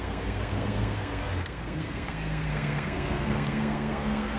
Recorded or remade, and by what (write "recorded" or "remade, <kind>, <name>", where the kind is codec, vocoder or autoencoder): remade, codec, SNAC